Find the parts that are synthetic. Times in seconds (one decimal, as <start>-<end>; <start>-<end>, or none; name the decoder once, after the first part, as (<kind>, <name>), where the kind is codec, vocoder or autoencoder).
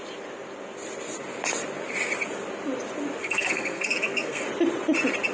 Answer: 3.2-4.4 (codec, SNAC)